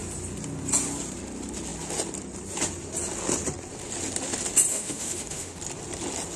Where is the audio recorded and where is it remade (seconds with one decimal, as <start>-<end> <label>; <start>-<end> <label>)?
0.0-4.7 recorded; 4.7-5.6 remade; 5.6-6.4 recorded